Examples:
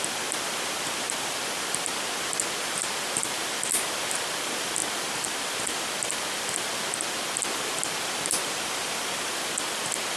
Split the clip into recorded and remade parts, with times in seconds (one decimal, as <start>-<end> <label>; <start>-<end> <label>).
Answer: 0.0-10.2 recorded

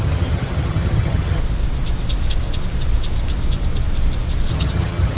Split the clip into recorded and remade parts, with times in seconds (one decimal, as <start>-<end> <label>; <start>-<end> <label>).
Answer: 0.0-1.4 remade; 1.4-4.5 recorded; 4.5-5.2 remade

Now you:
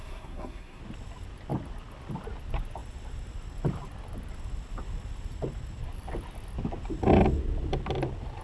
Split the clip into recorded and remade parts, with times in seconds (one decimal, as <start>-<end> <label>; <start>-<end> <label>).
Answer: 0.0-0.8 remade; 0.8-8.4 recorded